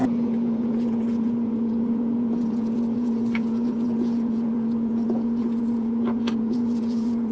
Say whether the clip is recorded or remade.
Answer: remade